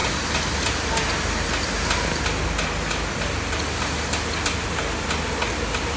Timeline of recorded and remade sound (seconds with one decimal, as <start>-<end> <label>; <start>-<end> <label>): 0.0-6.0 recorded